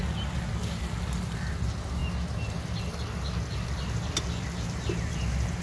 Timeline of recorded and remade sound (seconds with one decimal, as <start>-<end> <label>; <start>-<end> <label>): 0.0-5.6 recorded